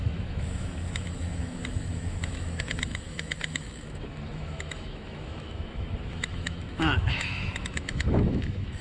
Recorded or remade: remade